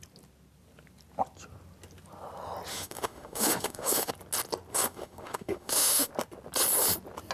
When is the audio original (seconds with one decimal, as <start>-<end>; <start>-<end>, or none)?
0.0-2.7; 4.1-4.7; 6.1-7.3